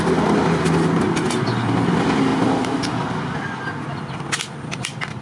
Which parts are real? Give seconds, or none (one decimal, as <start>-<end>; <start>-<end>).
0.0-5.2